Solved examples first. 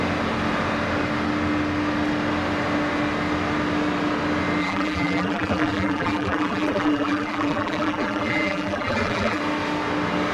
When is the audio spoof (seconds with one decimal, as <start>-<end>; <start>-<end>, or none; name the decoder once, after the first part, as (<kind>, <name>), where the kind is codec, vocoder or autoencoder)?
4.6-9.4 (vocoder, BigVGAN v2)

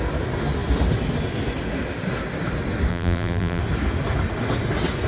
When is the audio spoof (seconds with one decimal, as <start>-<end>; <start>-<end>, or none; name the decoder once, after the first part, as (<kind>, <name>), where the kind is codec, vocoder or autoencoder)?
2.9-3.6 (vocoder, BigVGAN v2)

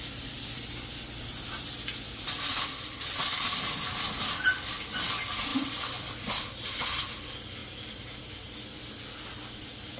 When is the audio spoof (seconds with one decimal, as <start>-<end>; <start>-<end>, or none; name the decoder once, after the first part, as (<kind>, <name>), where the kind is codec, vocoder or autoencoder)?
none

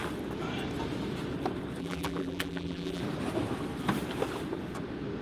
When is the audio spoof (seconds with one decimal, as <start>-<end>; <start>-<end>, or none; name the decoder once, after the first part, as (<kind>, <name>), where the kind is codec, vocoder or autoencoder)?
1.8-3.0 (vocoder, BigVGAN v2)